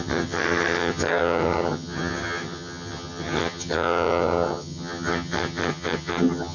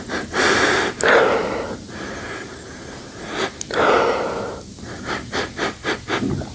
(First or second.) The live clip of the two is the second